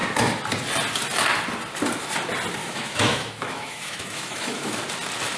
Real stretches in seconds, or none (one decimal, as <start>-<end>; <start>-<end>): 0.0-2.6; 4.8-5.4

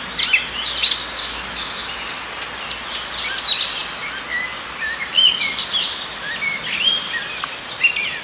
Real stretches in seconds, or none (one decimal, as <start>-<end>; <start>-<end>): 0.0-1.2; 1.9-8.2

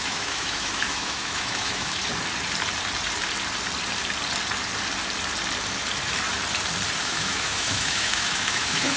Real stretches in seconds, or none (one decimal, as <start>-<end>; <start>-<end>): 2.0-7.0

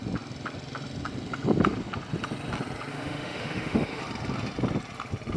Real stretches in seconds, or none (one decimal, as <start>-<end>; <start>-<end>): 0.0-2.9; 4.0-5.4

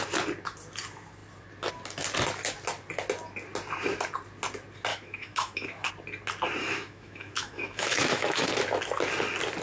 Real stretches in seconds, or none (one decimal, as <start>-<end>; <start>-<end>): 0.0-4.9; 5.9-6.6; 8.5-9.6